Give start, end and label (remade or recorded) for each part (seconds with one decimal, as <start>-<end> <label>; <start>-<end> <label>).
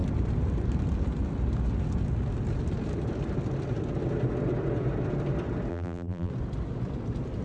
0.0-5.7 recorded; 5.7-6.3 remade; 6.3-7.4 recorded